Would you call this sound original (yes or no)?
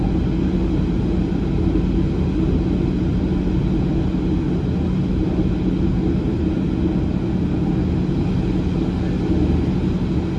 yes